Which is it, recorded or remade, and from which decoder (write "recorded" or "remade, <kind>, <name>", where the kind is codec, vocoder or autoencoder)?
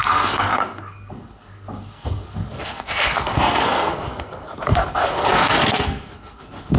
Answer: remade, codec, SNAC